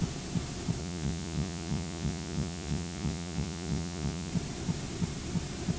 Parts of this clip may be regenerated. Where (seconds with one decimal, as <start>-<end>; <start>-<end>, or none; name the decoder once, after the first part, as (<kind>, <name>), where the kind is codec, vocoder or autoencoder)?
0.8-4.3 (vocoder, Vocos)